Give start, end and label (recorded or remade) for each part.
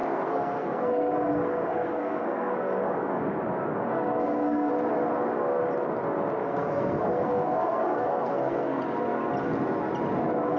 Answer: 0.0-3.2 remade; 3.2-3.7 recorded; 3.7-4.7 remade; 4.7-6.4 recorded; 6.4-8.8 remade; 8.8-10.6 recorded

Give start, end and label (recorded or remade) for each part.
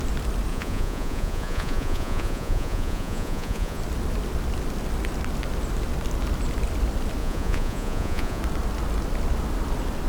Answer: 0.0-0.5 recorded; 0.5-3.8 remade; 3.8-7.2 recorded; 7.2-8.4 remade; 8.4-10.1 recorded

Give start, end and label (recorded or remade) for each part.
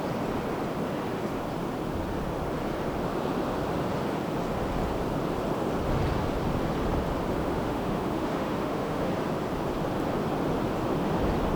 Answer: 0.0-7.4 recorded; 7.4-9.1 remade; 9.1-11.6 recorded